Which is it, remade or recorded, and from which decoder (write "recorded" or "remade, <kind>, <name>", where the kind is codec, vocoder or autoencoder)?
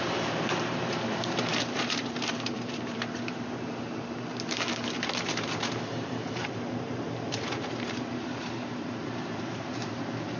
remade, vocoder, BigVGAN v2